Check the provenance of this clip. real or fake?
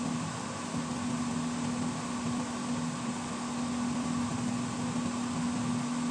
real